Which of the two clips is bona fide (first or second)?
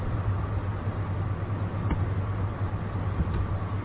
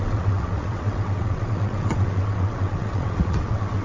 first